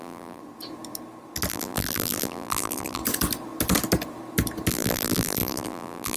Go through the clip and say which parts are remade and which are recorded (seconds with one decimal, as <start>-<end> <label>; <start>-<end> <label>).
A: 0.0-0.4 remade; 0.4-1.5 recorded; 1.5-3.0 remade; 3.0-4.7 recorded; 4.7-6.2 remade